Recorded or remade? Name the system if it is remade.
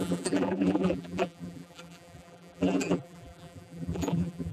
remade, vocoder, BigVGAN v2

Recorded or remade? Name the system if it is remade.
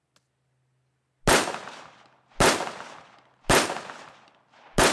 recorded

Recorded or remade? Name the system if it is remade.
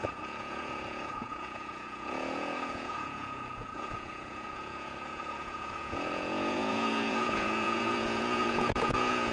remade, vocoder, Vocos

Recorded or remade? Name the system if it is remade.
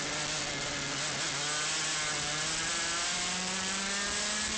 recorded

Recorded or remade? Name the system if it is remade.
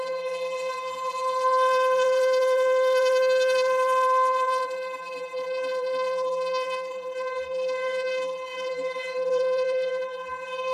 remade, vocoder, BigVGAN v2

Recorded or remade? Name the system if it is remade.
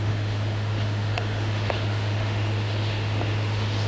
remade, autoencoder, DAC-VAE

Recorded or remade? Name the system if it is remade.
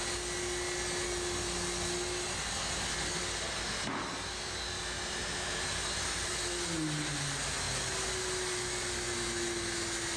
recorded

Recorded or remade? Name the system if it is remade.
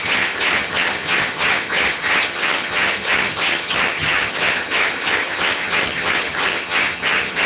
remade, vocoder, HiFi-GAN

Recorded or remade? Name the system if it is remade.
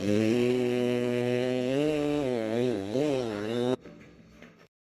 remade, codec, SNAC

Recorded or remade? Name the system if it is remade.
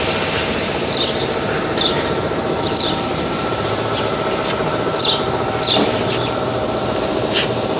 remade, vocoder, BigVGAN v2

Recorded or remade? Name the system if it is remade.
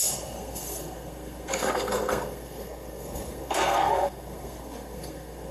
remade, codec, SNAC